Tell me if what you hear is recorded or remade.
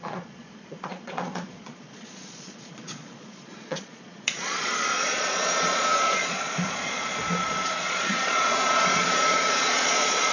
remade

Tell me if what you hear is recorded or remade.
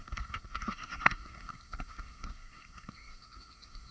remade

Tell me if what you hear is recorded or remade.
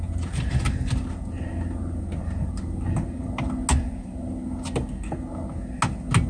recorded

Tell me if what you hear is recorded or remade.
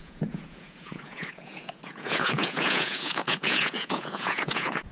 remade